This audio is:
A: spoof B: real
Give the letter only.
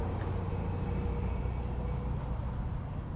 B